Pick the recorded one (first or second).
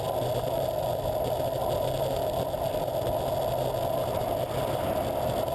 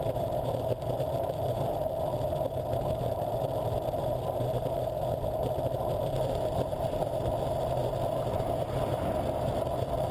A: first